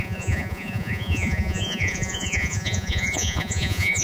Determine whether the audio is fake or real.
fake